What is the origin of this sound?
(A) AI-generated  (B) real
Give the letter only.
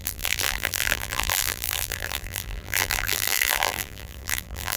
A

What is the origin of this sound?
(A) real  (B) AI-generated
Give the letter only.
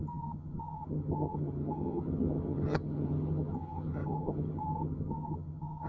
B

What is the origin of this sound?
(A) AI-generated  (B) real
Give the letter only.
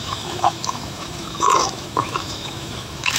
A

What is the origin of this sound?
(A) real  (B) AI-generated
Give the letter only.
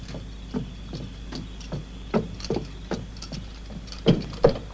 A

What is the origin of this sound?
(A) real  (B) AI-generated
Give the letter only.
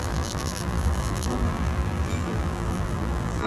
B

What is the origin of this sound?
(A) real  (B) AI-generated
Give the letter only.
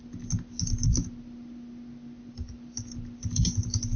A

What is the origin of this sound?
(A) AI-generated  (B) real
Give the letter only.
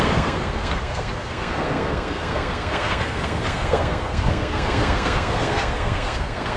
A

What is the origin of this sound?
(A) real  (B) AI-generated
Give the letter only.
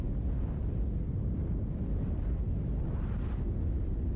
A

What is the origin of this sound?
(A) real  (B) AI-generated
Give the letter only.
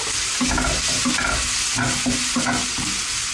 A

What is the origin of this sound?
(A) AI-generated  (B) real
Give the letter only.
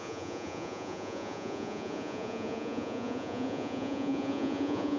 A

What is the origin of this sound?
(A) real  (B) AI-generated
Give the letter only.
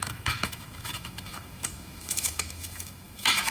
B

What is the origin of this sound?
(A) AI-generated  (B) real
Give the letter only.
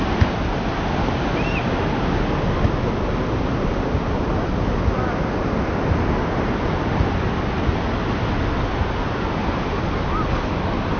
B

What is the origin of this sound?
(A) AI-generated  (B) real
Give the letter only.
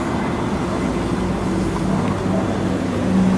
B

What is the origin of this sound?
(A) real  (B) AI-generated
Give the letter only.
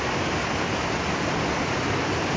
A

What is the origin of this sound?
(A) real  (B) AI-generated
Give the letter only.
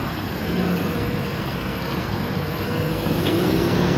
B